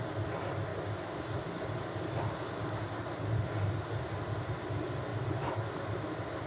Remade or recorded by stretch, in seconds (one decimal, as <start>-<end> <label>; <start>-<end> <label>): 0.0-6.5 recorded